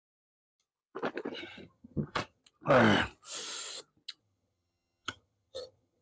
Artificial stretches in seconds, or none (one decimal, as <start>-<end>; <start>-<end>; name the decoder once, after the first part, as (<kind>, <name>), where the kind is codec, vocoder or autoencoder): 1.4-2.4 (vocoder, HiFi-GAN); 4.2-6.0